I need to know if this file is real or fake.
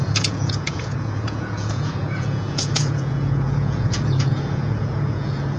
fake